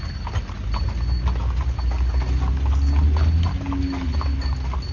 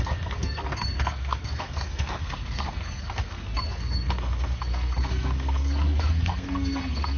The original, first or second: first